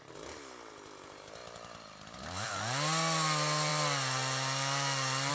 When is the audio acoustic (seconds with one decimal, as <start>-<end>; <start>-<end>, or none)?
0.0-1.4; 2.5-5.3